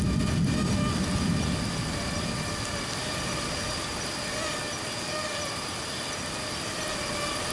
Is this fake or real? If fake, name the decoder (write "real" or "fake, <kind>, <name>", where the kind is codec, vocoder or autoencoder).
real